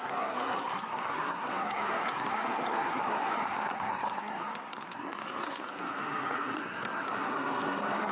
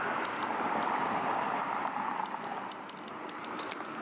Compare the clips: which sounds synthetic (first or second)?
first